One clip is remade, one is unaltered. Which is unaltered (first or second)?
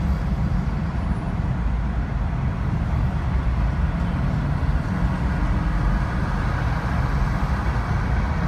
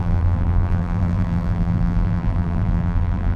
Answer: first